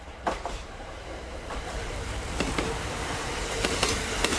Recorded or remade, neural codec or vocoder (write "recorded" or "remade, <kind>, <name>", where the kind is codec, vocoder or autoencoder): remade, vocoder, BigVGAN v2